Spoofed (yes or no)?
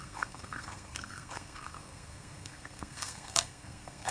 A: yes